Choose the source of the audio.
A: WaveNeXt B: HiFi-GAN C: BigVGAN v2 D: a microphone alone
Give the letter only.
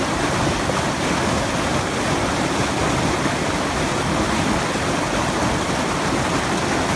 D